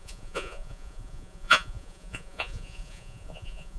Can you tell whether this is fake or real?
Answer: fake